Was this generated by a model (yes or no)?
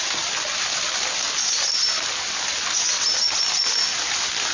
no